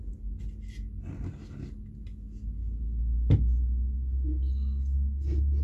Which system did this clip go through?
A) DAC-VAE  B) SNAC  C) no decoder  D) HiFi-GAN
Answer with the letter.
C